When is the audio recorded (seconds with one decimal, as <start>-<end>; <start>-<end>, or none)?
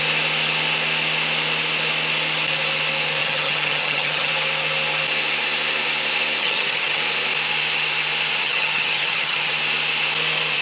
0.0-3.2; 4.3-6.4; 7.0-8.4; 9.5-10.6